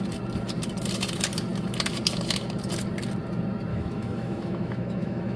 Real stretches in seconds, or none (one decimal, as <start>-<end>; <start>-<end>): 0.0-3.7